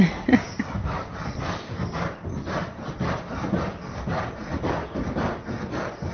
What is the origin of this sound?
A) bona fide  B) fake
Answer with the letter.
A